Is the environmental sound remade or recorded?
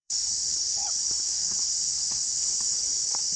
remade